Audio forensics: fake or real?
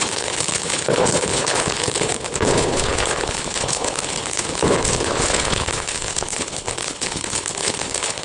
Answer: fake